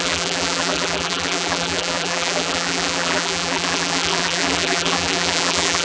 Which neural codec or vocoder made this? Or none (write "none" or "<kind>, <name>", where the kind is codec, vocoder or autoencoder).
vocoder, BigVGAN v2